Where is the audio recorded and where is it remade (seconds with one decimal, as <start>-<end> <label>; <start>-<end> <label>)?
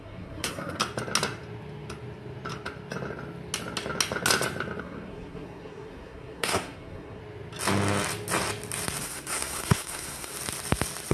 0.0-0.8 remade; 0.8-4.8 recorded; 4.8-7.2 remade; 7.2-9.0 recorded; 9.0-10.3 remade; 10.3-11.1 recorded